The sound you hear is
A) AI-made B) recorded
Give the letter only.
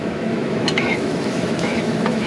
A